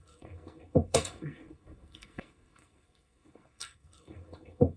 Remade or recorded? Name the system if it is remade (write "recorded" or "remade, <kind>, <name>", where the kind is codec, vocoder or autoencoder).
remade, codec, SNAC